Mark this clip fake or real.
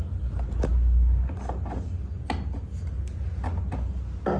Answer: real